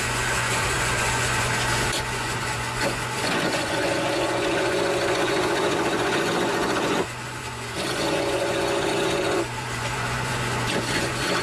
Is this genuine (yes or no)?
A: no